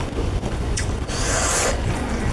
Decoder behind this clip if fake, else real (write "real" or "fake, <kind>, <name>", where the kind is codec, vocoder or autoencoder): fake, vocoder, Vocos